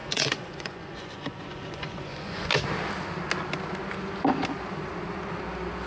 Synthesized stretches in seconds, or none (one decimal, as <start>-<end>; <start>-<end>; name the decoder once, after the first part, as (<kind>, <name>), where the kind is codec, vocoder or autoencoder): 0.0-2.5 (vocoder, Vocos)